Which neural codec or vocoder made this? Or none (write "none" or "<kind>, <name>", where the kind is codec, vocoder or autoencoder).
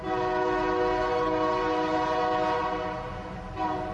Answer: none